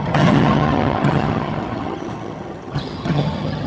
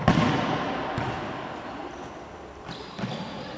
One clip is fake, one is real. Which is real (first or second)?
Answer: second